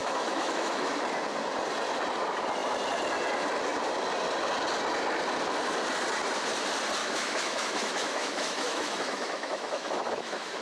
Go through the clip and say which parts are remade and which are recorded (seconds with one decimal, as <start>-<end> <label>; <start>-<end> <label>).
0.0-0.9 remade; 0.9-7.0 recorded; 7.0-10.6 remade